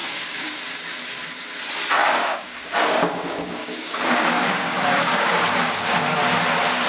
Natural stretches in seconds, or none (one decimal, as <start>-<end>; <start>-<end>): 0.6-2.0; 5.5-6.9